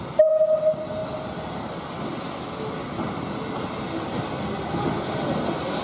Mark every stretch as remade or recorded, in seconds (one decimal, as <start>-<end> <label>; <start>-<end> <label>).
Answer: 0.0-5.8 recorded